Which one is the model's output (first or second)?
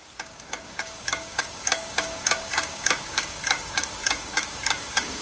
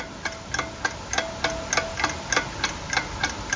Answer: first